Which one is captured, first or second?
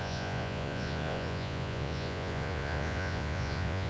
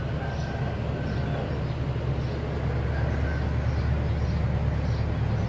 second